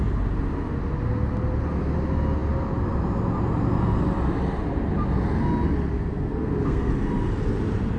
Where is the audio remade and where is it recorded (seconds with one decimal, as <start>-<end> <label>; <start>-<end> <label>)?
0.0-6.1 recorded; 6.1-6.9 remade; 6.9-8.0 recorded